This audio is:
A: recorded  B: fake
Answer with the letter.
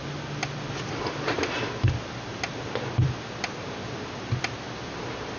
A